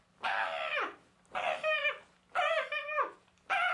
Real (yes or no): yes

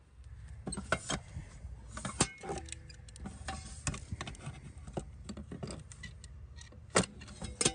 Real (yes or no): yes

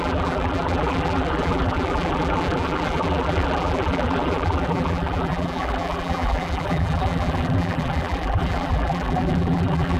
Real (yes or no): no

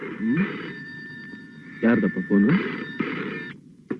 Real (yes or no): no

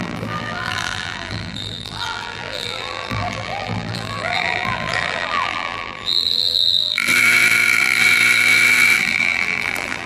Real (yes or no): no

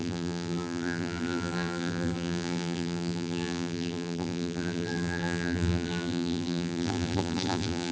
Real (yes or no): no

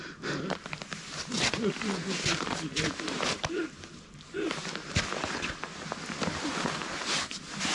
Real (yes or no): no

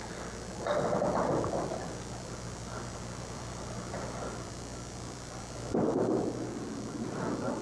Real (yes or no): no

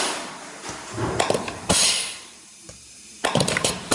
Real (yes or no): no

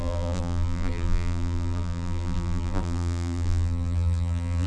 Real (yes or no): no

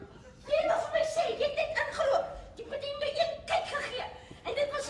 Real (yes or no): no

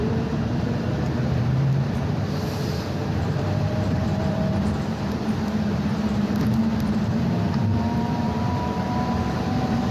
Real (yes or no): no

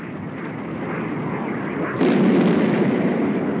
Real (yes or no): yes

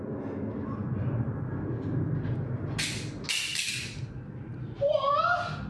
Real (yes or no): yes